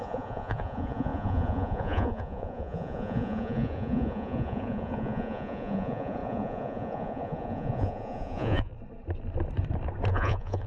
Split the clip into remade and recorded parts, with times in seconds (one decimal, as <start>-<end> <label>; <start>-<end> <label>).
0.0-8.7 remade; 8.7-10.1 recorded; 10.1-10.7 remade